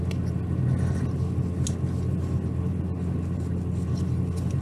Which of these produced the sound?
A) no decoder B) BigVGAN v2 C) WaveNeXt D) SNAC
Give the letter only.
A